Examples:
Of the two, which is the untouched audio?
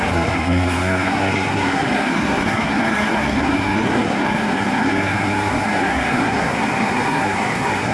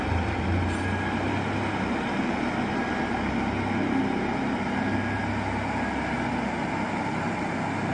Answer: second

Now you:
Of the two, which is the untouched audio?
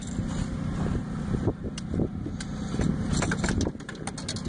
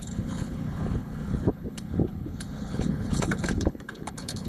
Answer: first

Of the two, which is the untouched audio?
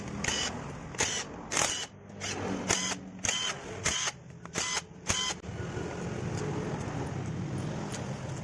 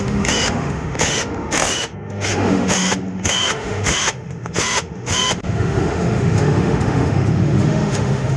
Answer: first